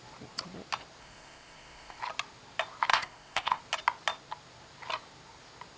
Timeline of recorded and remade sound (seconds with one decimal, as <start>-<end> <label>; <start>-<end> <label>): 0.0-1.0 recorded; 1.0-2.0 remade; 2.0-2.9 recorded; 2.9-3.6 remade; 3.6-5.8 recorded